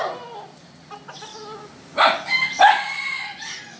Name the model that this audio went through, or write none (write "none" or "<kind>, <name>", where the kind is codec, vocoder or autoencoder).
none